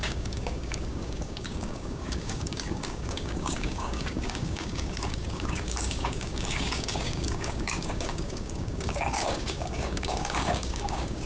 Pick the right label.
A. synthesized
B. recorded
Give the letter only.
A